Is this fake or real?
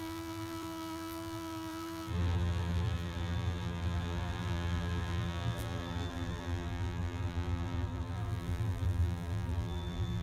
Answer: fake